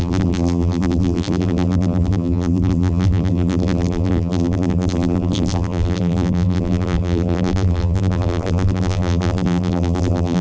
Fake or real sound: fake